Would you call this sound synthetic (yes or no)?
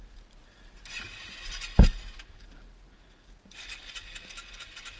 no